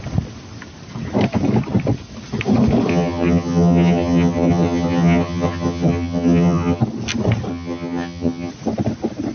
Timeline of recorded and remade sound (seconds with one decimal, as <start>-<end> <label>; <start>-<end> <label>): 0.0-2.9 recorded; 2.9-6.8 remade; 6.8-7.5 recorded; 7.5-8.5 remade; 8.5-9.3 recorded